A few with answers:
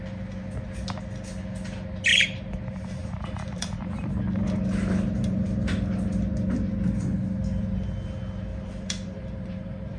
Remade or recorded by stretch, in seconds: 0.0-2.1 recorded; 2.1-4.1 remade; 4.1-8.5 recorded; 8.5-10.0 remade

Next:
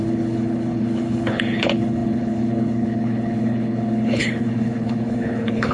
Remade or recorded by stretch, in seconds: 0.0-5.7 remade

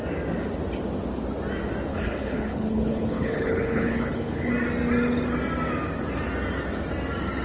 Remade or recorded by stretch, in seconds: 0.0-1.9 recorded; 1.9-4.5 remade; 4.5-7.4 recorded

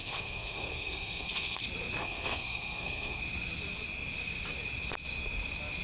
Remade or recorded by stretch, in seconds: 0.0-1.6 remade; 1.6-2.0 recorded; 2.0-3.2 remade; 3.2-5.8 recorded

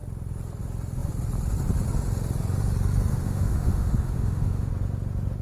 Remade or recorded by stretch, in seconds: 0.0-3.1 recorded; 3.1-4.7 remade; 4.7-5.4 recorded

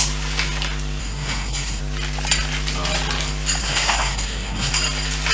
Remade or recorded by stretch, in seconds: 0.0-1.0 recorded; 1.0-1.8 remade; 1.8-3.6 recorded; 3.6-4.7 remade; 4.7-5.3 recorded